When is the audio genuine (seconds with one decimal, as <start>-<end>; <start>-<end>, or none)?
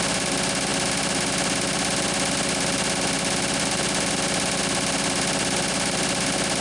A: 0.0-6.6